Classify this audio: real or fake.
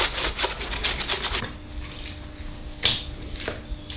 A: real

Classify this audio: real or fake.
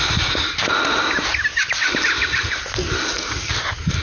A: real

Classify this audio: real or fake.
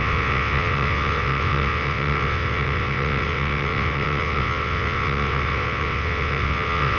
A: fake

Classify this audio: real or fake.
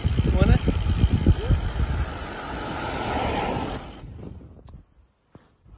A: real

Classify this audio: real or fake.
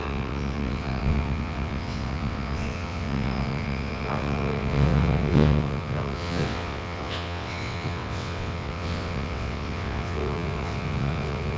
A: fake